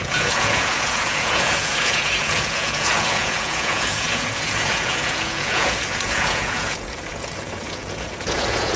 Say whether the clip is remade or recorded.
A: remade